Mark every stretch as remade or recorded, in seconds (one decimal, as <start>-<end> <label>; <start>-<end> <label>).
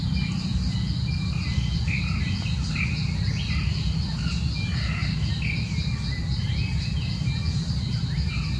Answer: 0.0-8.6 recorded